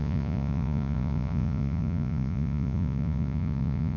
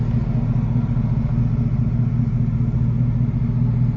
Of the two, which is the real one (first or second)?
second